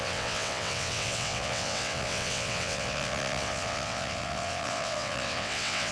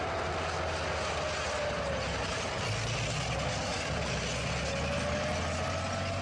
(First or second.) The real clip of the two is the second